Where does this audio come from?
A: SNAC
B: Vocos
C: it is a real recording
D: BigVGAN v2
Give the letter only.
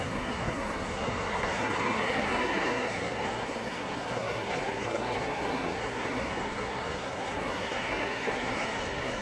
A